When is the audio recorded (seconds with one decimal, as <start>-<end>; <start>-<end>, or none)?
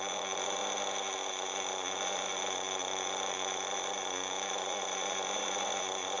0.6-1.3